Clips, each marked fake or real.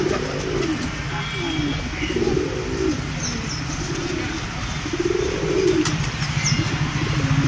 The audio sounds real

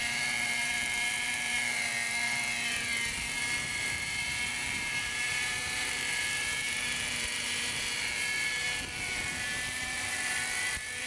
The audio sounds fake